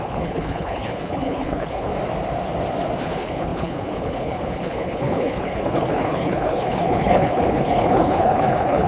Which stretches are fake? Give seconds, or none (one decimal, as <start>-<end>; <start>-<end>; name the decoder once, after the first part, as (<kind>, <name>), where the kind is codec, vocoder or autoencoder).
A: 0.0-1.9 (codec, HILCodec); 3.0-8.9